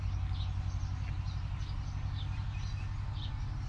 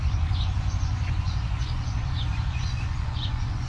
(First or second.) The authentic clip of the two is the first